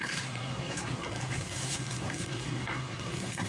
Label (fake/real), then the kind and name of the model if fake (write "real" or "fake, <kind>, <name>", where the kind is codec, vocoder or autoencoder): fake, codec, SNAC